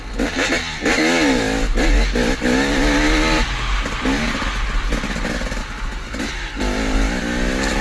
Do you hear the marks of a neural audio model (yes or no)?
no